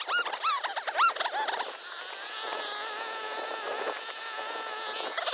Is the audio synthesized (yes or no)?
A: no